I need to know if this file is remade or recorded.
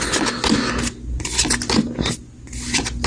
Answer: recorded